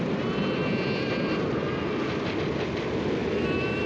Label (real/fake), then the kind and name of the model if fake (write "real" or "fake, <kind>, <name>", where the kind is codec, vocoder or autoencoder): real